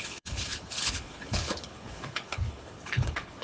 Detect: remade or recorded remade